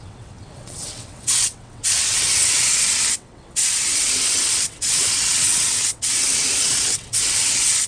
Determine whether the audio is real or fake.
fake